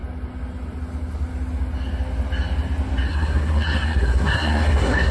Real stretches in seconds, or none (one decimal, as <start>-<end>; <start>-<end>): 0.0-3.1